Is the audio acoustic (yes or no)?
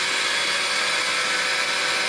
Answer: yes